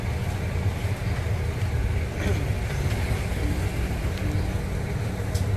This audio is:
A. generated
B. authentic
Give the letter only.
B